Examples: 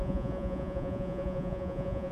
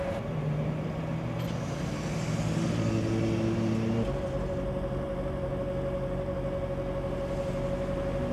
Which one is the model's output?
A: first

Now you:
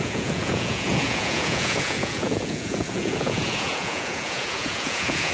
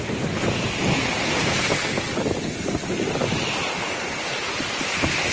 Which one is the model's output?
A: first